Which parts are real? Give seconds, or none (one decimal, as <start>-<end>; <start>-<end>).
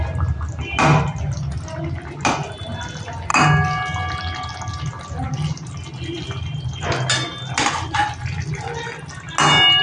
0.0-9.8